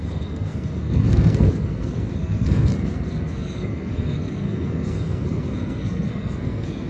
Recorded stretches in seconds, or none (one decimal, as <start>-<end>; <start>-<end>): none